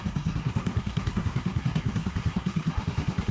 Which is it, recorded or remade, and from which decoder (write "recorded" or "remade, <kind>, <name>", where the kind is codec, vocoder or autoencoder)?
remade, codec, SNAC